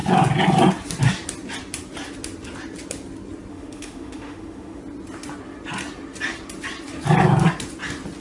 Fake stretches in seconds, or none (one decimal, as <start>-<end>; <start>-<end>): 3.5-4.8

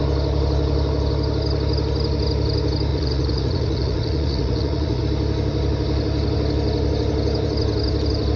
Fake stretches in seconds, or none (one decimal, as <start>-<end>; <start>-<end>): 2.9-5.0